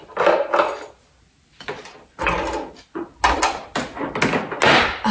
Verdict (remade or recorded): recorded